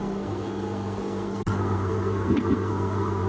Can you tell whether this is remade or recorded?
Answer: remade